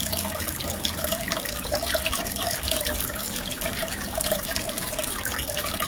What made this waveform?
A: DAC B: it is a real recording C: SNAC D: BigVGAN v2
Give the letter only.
A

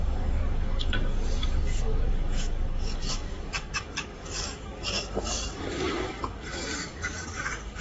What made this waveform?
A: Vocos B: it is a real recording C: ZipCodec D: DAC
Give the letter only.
D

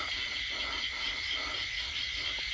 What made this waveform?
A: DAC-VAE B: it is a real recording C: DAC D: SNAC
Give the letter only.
B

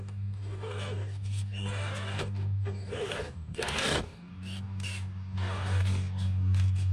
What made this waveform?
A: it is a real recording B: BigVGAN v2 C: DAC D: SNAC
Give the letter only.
C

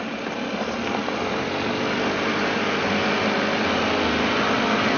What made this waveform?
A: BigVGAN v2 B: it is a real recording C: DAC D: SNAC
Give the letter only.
B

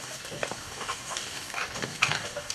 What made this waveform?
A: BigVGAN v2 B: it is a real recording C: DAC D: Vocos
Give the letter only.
C